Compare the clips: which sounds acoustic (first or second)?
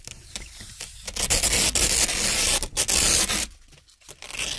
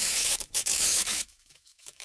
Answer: first